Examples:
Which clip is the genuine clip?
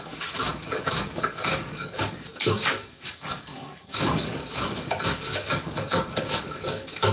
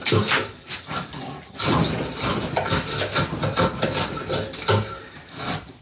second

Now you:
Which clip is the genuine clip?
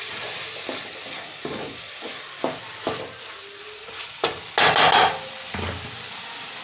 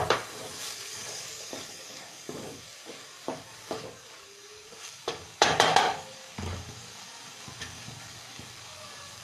first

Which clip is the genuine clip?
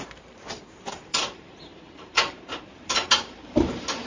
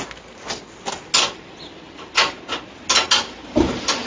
second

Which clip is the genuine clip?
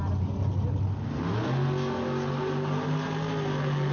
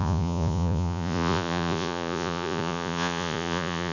first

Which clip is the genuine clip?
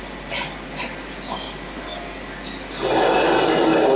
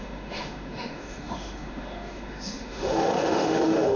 first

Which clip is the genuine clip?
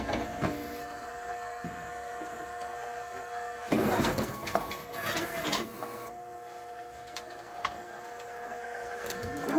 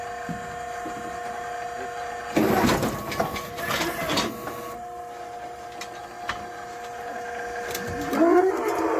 second